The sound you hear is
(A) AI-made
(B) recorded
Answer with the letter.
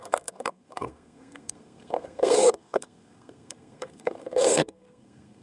A